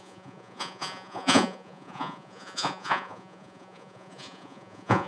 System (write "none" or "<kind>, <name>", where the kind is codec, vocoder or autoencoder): vocoder, Vocos